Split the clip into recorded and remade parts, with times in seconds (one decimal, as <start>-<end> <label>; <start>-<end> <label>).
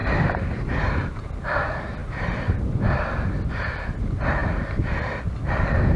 0.0-1.3 remade; 1.3-2.0 recorded; 2.0-3.1 remade; 3.1-6.0 recorded